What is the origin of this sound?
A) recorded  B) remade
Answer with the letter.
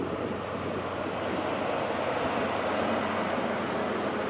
A